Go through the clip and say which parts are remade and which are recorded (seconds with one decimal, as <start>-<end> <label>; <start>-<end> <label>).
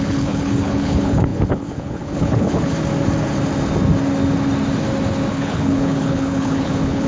0.0-2.7 remade; 2.7-5.3 recorded; 5.3-7.1 remade